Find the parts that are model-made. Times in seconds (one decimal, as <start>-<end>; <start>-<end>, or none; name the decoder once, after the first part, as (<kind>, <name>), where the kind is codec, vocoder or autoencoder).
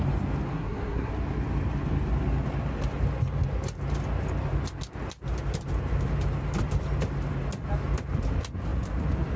0.5-1.1 (codec, SNAC)